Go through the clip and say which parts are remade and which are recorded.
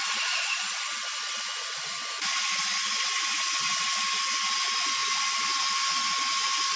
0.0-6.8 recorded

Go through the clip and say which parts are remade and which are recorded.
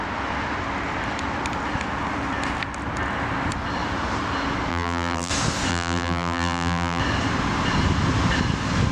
0.0-4.7 recorded; 4.7-5.3 remade; 5.3-5.7 recorded; 5.7-7.0 remade; 7.0-8.9 recorded